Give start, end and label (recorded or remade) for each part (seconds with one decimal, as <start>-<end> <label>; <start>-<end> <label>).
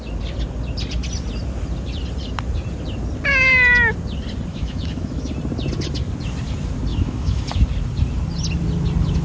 0.0-4.5 recorded; 4.5-5.3 remade; 5.3-6.9 recorded; 6.9-7.4 remade; 7.4-9.2 recorded